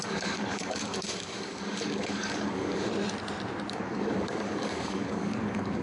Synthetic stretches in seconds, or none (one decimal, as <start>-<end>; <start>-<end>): 0.0-2.9; 3.7-5.8